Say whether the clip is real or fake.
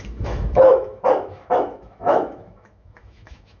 fake